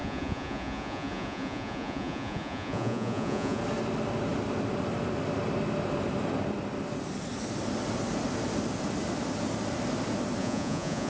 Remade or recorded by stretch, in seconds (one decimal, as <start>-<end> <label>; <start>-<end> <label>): 0.0-3.6 remade; 3.6-10.4 recorded; 10.4-11.1 remade